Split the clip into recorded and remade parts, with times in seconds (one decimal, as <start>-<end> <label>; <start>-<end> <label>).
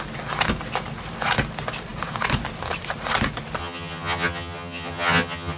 0.0-3.6 recorded; 3.6-5.6 remade